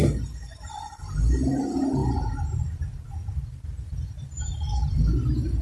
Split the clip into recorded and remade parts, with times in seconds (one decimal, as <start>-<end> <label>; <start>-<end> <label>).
0.0-5.6 recorded